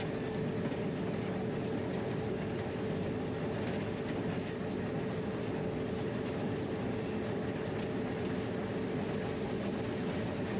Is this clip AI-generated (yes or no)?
no